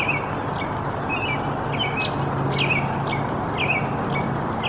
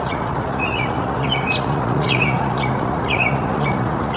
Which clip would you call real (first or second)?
first